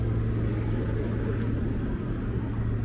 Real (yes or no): yes